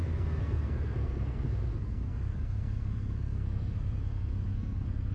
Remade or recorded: remade